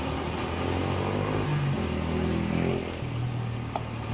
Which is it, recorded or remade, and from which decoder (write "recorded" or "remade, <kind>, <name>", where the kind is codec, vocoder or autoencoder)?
recorded